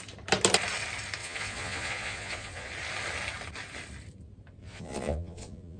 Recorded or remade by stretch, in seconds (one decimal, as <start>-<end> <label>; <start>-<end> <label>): 0.0-1.2 recorded; 1.2-2.7 remade; 2.7-4.6 recorded; 4.6-5.8 remade